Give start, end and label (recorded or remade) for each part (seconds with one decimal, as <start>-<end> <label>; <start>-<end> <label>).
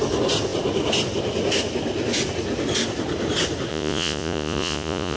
0.0-3.7 recorded; 3.7-5.2 remade